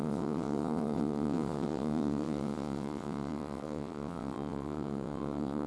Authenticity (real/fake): fake